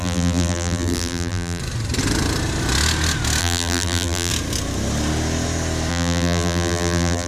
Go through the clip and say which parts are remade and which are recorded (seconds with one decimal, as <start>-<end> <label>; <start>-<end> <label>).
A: 0.0-1.6 remade; 1.6-3.4 recorded; 3.4-4.3 remade; 4.3-5.9 recorded; 5.9-7.3 remade